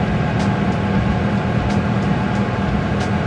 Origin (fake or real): real